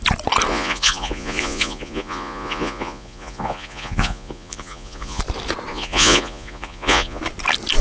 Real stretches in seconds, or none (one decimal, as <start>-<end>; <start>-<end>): 0.0-0.5; 5.2-5.7; 7.2-7.8